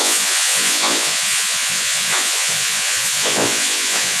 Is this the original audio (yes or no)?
no